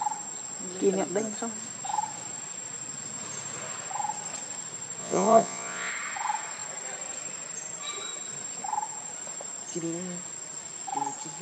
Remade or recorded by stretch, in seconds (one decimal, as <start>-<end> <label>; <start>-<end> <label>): 0.0-5.0 recorded; 5.0-5.9 remade; 5.9-11.4 recorded